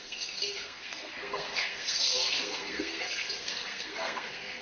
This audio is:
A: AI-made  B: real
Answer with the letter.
A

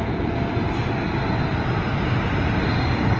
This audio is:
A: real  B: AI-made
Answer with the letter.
A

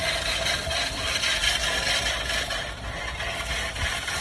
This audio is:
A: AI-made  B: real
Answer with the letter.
B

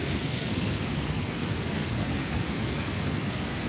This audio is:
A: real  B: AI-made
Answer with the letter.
B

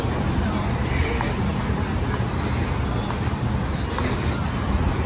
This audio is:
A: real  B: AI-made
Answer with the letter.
A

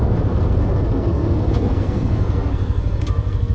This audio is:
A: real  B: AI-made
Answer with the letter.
B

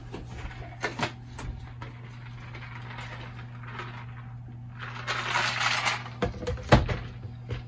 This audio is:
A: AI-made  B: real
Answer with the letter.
B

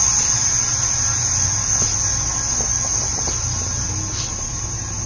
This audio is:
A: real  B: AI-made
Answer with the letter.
A